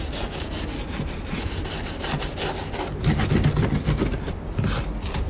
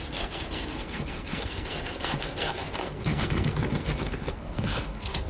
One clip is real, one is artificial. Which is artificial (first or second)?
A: second